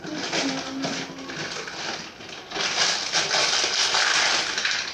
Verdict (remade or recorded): recorded